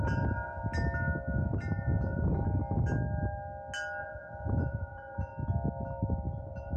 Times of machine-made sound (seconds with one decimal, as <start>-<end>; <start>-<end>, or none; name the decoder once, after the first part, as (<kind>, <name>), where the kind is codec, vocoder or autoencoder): 0.0-0.6 (vocoder, Vocos); 1.4-2.6; 4.0-5.3; 6.3-6.8